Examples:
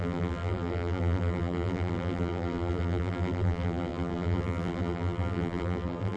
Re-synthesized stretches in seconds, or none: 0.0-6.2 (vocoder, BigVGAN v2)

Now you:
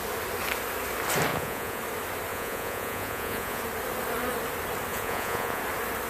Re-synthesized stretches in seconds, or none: 1.3-1.8 (vocoder, Vocos); 2.3-3.6; 4.9-5.6

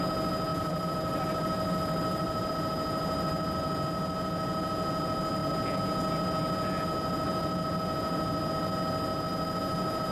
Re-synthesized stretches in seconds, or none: 0.5-2.5 (vocoder, BigVGAN v2)